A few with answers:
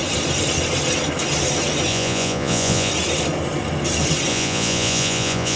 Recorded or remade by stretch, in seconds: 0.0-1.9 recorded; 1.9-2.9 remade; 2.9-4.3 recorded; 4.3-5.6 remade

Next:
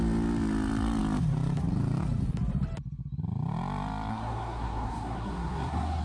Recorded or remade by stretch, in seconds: 0.0-4.1 recorded; 4.1-6.0 remade

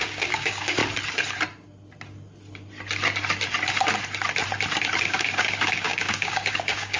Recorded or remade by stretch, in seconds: 0.0-0.8 remade; 0.8-5.0 recorded; 5.0-7.0 remade